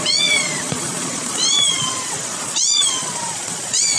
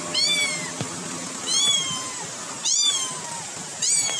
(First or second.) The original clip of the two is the second